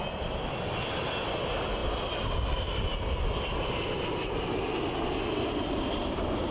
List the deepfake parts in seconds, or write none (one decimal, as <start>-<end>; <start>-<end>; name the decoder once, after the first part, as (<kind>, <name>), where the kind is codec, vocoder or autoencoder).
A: 1.8-4.0 (vocoder, BigVGAN v2)